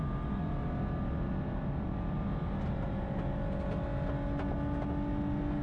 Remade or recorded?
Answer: recorded